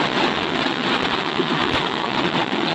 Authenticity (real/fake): fake